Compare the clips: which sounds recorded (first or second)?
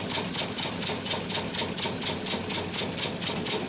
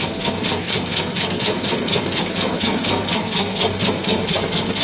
first